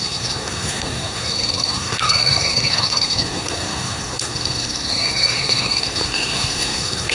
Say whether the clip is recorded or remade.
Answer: remade